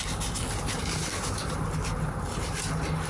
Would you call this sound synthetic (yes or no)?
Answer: no